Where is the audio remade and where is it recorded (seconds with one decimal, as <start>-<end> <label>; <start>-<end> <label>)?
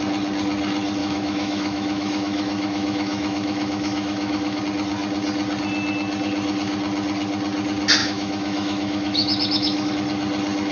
0.0-1.0 recorded; 1.0-4.6 remade; 4.6-8.0 recorded; 8.0-9.9 remade; 9.9-10.7 recorded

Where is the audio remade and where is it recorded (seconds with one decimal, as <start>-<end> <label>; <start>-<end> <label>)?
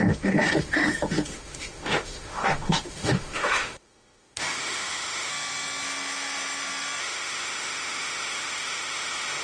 0.0-5.3 remade; 5.3-7.0 recorded; 7.0-9.4 remade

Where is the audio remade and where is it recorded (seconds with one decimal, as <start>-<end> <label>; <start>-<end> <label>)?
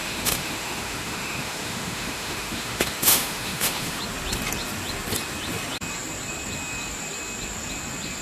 0.0-4.0 remade; 4.0-8.2 recorded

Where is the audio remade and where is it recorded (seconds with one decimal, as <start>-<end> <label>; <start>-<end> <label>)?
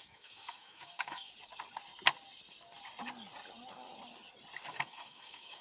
0.0-1.3 remade; 1.3-4.7 recorded; 4.7-5.6 remade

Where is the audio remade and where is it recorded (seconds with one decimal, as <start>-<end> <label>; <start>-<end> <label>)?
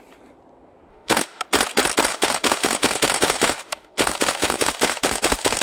0.0-0.9 recorded; 0.9-1.4 remade; 1.4-2.1 recorded; 2.1-5.6 remade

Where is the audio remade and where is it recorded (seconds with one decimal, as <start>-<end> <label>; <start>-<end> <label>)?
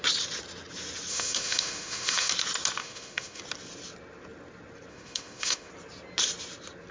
0.0-1.1 recorded; 1.1-2.3 remade; 2.3-2.8 recorded; 2.8-3.4 remade; 3.4-4.9 recorded; 4.9-5.7 remade; 5.7-6.9 recorded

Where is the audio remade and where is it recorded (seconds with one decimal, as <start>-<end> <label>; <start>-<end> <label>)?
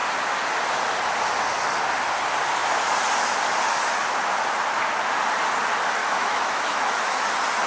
0.0-6.0 recorded; 6.0-7.3 remade; 7.3-7.7 recorded